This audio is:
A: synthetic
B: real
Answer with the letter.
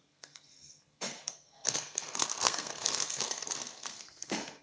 A